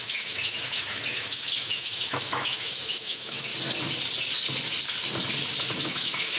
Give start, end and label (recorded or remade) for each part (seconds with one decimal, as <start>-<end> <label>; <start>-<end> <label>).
0.0-3.5 remade; 3.5-5.8 recorded; 5.8-6.4 remade